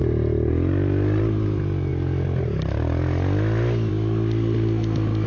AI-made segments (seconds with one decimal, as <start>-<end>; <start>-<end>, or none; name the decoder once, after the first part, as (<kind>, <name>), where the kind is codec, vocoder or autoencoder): none

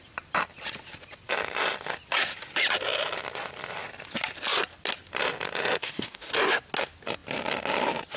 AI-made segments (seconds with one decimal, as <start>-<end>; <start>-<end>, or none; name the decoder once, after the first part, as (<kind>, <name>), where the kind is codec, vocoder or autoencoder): 5.8-6.3 (codec, DAC)

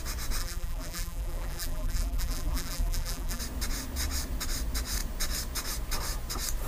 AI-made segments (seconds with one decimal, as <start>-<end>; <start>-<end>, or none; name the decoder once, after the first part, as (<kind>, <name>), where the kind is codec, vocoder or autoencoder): 0.4-3.4 (vocoder, BigVGAN v2)